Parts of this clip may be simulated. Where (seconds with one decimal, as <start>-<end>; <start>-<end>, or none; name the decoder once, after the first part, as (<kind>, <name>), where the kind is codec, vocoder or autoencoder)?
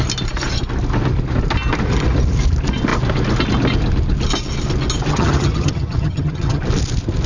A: 5.1-6.6 (vocoder, HiFi-GAN)